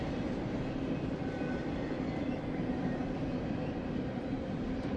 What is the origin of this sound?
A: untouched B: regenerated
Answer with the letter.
A